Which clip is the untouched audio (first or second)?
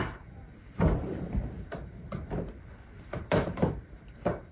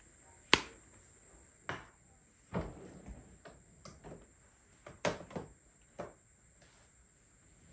second